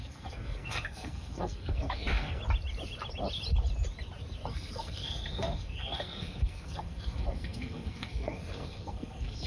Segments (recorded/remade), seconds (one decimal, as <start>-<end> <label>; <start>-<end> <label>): 0.0-2.4 remade; 2.4-4.5 recorded; 4.5-9.5 remade